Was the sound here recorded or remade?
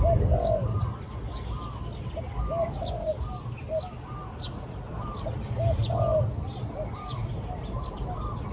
recorded